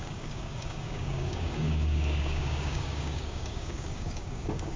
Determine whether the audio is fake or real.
fake